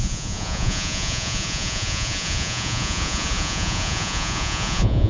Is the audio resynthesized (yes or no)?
yes